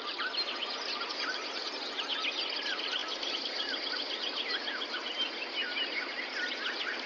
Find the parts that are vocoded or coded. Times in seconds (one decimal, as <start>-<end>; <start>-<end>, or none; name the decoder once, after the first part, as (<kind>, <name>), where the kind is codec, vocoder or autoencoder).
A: none